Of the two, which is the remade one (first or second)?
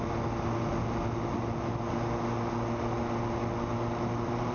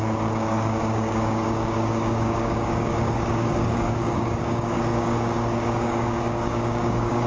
second